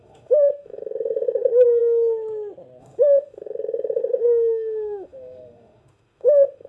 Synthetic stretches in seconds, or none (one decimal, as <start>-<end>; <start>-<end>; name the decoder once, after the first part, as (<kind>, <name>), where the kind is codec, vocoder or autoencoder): 0.0-1.8 (autoencoder, DAC-VAE); 2.8-6.7